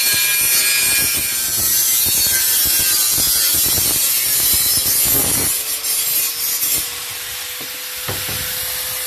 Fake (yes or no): no